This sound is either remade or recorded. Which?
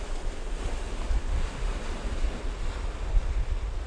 recorded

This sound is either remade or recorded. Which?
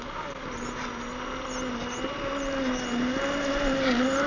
recorded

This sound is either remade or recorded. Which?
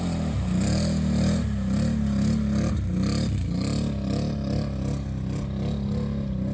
recorded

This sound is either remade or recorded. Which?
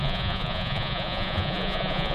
remade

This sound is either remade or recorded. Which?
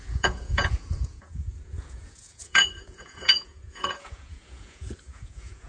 remade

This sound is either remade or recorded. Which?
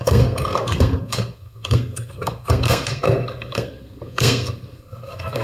remade